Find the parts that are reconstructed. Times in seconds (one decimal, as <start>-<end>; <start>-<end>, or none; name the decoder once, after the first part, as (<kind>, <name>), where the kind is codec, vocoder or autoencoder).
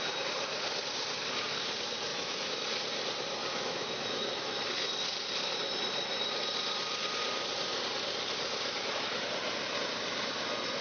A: 2.1-2.6 (autoencoder, DAC-VAE); 3.5-4.6